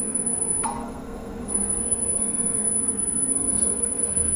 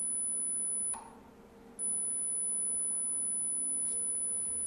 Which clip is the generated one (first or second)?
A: first